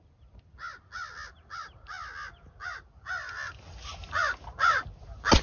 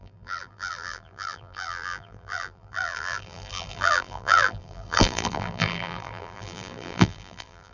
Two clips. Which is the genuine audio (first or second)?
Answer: first